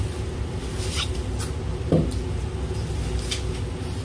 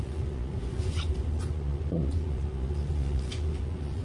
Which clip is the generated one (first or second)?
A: second